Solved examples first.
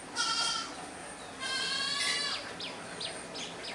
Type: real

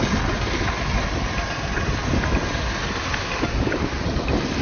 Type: real